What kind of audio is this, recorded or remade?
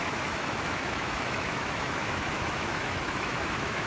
remade